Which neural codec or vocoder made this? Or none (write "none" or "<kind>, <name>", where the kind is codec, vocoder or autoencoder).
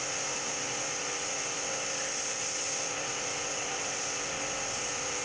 none